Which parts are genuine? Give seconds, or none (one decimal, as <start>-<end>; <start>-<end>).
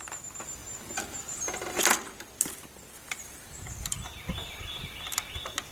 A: 0.0-1.9; 5.3-5.7